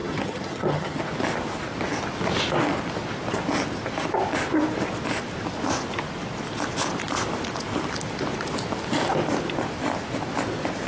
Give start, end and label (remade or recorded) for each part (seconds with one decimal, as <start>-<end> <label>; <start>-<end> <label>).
0.0-1.0 remade; 1.0-10.9 recorded